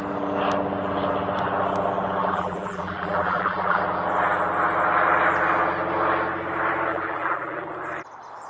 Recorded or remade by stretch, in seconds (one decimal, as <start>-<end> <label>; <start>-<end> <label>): 0.0-2.2 recorded; 2.2-3.8 remade; 3.8-6.9 recorded; 6.9-7.7 remade; 7.7-8.5 recorded